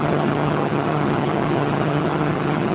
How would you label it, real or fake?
fake